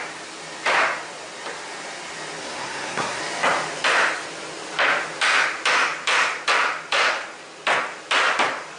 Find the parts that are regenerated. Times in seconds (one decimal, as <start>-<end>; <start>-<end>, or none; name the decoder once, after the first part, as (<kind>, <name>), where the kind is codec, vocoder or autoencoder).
2.4-3.2 (codec, SNAC)